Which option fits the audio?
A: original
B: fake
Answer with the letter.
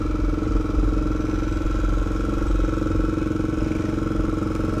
A